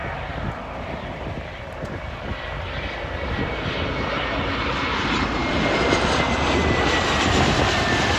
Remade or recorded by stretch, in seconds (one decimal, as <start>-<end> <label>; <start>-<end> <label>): 0.0-8.2 remade